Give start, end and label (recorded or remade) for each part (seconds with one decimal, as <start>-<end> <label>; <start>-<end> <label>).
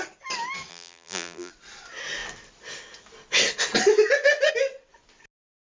0.0-0.7 recorded; 0.7-1.5 remade; 1.5-5.6 recorded